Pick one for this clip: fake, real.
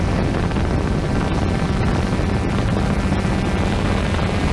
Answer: real